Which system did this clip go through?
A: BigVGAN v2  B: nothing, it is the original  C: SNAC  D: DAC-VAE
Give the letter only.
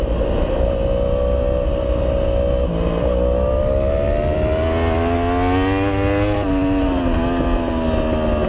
B